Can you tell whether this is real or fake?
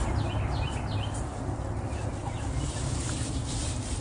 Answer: real